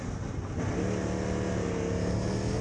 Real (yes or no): yes